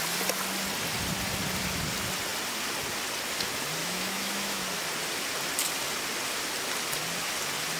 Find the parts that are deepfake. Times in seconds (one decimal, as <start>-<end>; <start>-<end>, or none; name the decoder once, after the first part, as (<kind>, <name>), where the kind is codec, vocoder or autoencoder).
3.8-4.6 (autoencoder, DAC-VAE)